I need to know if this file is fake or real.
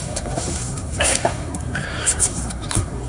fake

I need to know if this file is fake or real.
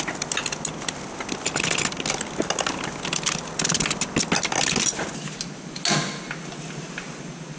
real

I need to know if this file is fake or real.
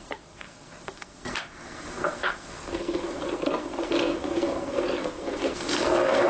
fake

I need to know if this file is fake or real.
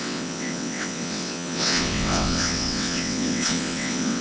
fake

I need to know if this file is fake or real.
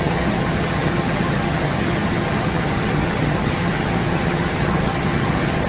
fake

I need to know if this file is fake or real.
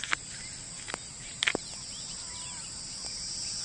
real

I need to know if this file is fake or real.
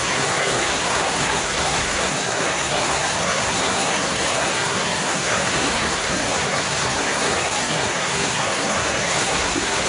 fake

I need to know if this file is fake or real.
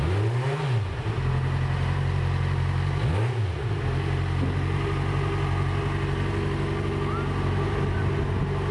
real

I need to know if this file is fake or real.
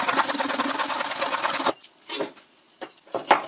real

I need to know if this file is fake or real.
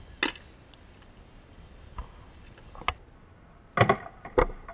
real